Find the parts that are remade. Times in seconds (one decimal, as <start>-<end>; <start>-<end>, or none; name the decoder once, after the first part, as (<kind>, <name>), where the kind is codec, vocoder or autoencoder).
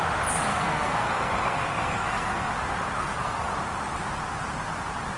0.5-2.5 (codec, SNAC); 3.0-3.5